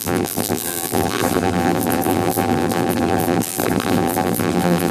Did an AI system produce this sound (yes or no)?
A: yes